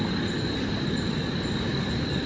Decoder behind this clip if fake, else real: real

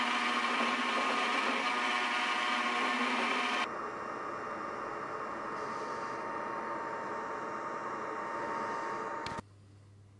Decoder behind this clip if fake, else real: real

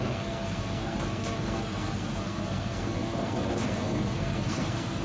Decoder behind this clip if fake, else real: fake, codec, SNAC